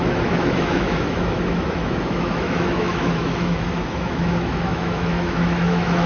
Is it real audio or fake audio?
fake